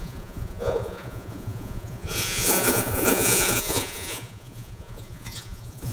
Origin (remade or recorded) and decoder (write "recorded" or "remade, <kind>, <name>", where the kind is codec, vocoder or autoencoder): remade, vocoder, Vocos